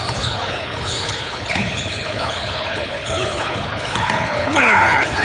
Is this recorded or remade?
remade